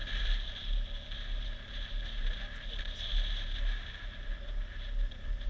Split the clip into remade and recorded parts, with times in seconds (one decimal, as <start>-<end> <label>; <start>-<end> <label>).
0.0-5.5 recorded